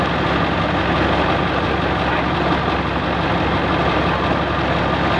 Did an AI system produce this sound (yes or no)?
no